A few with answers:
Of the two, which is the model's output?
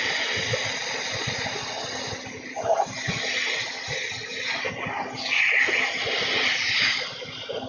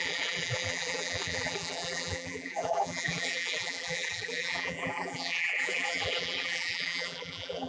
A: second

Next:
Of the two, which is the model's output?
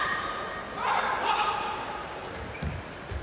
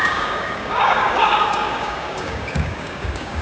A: second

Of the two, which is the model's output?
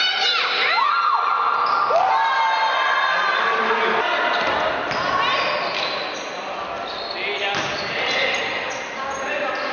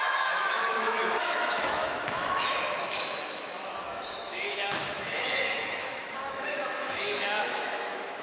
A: second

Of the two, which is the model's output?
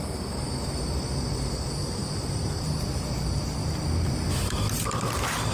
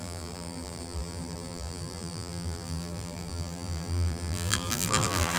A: second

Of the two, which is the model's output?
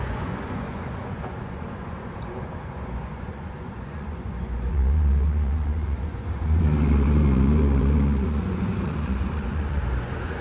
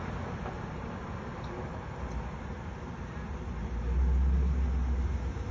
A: first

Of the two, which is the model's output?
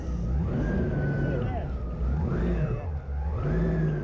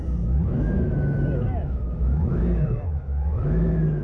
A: second